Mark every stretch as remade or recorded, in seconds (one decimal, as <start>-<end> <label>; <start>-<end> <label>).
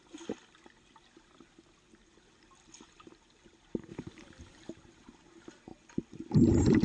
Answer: 0.0-3.9 recorded; 3.9-4.7 remade; 4.7-5.7 recorded; 5.7-6.3 remade; 6.3-6.8 recorded